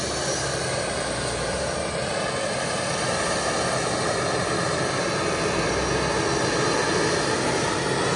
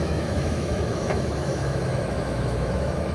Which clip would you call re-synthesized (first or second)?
second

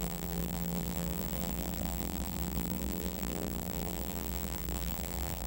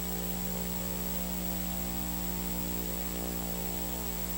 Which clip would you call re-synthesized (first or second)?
first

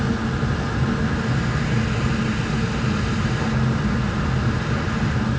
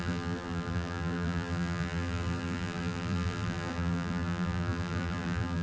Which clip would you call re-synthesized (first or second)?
second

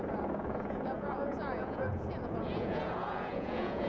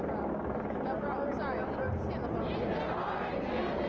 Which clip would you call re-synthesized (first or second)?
first